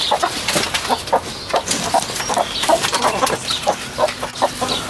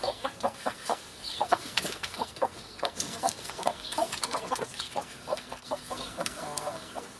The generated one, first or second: second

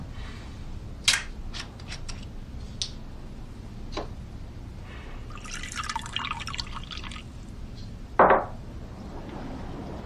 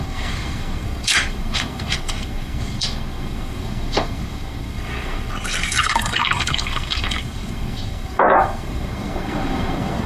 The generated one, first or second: second